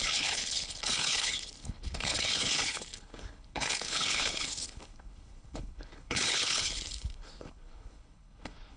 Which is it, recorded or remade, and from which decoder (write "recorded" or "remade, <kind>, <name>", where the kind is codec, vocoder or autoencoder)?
remade, codec, HILCodec